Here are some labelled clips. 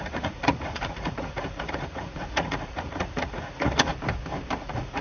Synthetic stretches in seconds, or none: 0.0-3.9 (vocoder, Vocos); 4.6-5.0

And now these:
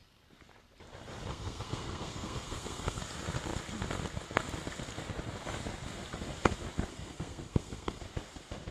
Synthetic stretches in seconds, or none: 1.3-3.0 (codec, SNAC); 6.9-8.0

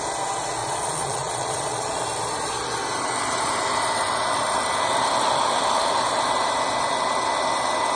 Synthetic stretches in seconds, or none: 0.6-2.0 (vocoder, Vocos)

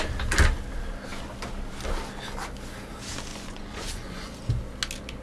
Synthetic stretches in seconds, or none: 3.3-4.3 (vocoder, Vocos)

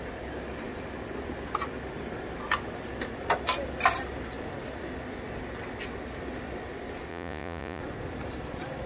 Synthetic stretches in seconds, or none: 7.1-7.8 (vocoder, Vocos)